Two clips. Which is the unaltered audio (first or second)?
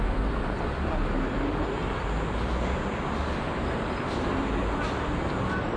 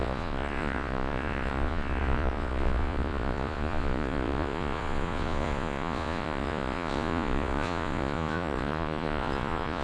first